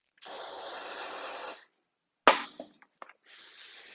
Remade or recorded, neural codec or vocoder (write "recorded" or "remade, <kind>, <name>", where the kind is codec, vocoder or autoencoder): recorded